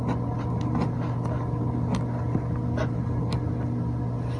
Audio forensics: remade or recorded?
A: recorded